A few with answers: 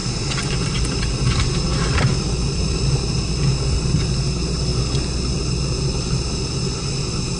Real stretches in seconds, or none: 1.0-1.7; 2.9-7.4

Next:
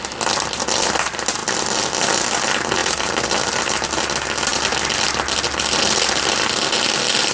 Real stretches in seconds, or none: 0.0-7.3

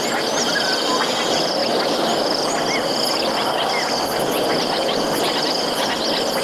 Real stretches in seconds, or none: 0.0-6.4

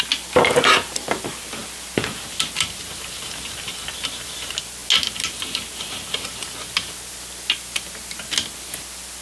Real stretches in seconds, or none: 0.0-9.2

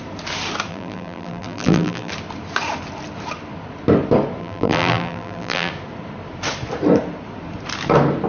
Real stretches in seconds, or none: 0.0-0.7; 2.1-4.4; 5.7-8.3

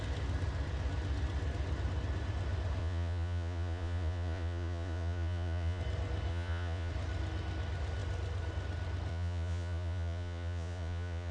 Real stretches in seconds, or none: 0.0-2.8; 5.8-6.3; 6.9-9.1

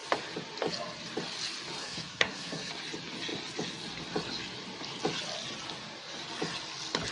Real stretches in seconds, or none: 0.0-1.8; 2.7-7.1